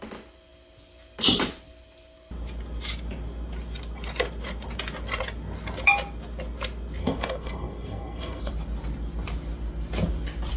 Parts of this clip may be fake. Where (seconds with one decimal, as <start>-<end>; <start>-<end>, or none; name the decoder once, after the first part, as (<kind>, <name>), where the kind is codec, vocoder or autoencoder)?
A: 7.0-8.5 (codec, SNAC)

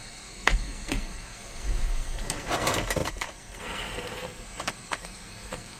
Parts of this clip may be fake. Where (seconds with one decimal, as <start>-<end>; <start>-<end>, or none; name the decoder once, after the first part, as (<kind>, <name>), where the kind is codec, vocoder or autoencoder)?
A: 0.0-5.8 (codec, SNAC)